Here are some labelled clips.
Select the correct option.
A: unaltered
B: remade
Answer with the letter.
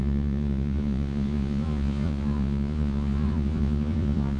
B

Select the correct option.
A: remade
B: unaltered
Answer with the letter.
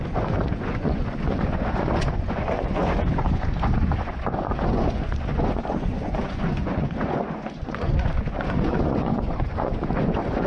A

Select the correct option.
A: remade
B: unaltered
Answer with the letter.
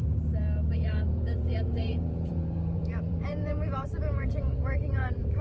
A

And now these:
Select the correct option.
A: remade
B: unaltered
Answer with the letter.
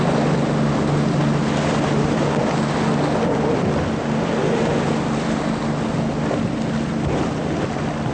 B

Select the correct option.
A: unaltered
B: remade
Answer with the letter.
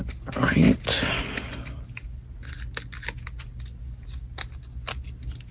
A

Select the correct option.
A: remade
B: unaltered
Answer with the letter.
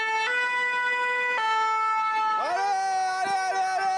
B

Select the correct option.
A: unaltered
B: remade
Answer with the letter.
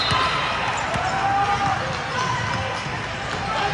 A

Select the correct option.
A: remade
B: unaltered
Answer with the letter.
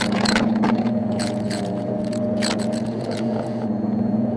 A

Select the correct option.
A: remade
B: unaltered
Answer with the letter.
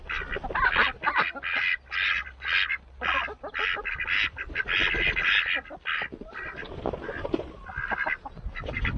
B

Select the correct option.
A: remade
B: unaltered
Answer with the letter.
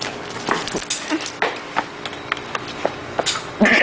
B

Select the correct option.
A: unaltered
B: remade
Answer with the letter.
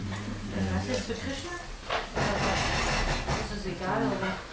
A